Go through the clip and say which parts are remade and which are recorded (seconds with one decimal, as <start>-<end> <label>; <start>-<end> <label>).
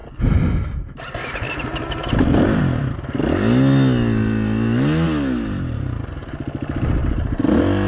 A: 0.0-2.0 recorded; 2.0-2.6 remade; 2.6-7.0 recorded; 7.0-7.9 remade